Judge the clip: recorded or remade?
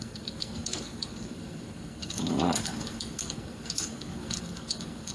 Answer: remade